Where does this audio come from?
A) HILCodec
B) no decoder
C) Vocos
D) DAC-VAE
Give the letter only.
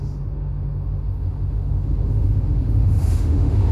D